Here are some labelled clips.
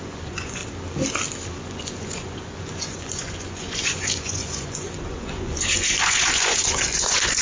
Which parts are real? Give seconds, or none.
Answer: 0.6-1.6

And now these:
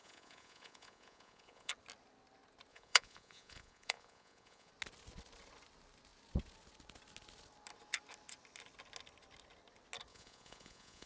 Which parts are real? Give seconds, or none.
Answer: 1.7-2.7; 4.7-10.1